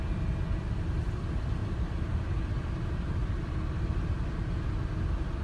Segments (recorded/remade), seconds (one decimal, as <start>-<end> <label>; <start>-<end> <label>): 0.0-5.4 recorded